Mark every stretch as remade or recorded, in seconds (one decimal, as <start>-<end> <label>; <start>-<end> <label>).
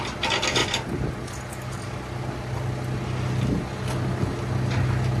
0.0-5.2 recorded